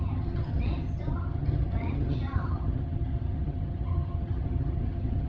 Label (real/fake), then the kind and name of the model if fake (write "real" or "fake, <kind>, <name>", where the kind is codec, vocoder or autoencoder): fake, vocoder, HiFi-GAN